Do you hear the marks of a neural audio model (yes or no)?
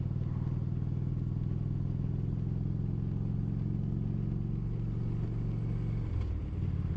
no